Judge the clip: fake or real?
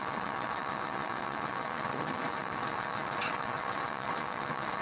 fake